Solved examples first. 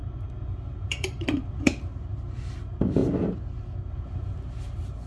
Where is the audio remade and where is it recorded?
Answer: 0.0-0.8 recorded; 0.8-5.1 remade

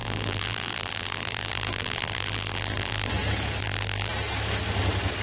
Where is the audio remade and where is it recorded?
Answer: 0.0-3.1 remade; 3.1-3.6 recorded; 3.6-4.1 remade; 4.1-5.2 recorded

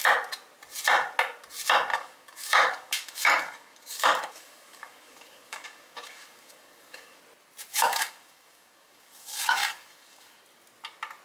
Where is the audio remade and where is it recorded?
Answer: 0.0-1.9 recorded; 1.9-7.2 remade; 7.2-7.7 recorded; 7.7-10.4 remade; 10.4-11.2 recorded

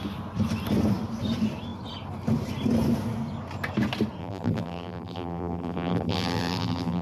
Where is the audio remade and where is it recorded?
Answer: 0.0-4.2 recorded; 4.2-7.0 remade

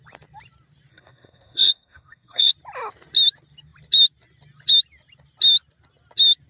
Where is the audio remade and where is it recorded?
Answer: 0.0-0.9 recorded; 0.9-2.5 remade; 2.5-6.5 recorded

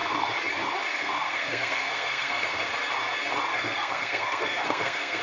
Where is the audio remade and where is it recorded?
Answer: 0.0-0.9 recorded; 0.9-2.7 remade; 2.7-3.5 recorded; 3.5-5.2 remade

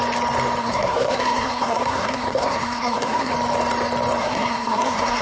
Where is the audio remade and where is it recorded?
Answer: 0.0-0.6 recorded; 0.6-3.3 remade; 3.3-4.2 recorded; 4.2-5.2 remade